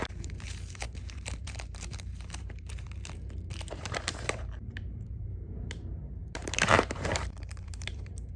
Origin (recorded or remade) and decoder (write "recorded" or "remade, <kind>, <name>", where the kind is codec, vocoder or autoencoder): remade, vocoder, BigVGAN v2